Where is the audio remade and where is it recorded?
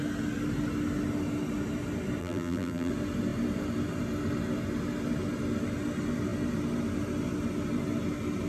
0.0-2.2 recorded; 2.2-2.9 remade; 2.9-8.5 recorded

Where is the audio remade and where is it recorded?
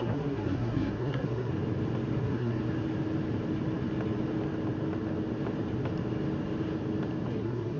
0.0-1.5 remade; 1.5-2.2 recorded; 2.2-2.6 remade; 2.6-7.3 recorded; 7.3-7.8 remade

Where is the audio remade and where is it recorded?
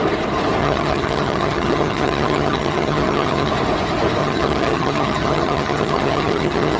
0.0-0.6 recorded; 0.6-3.5 remade; 3.5-4.2 recorded; 4.2-6.8 remade